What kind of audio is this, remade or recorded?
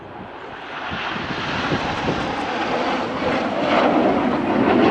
recorded